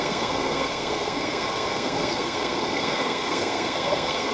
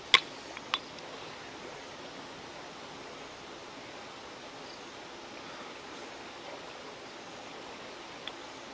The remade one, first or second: first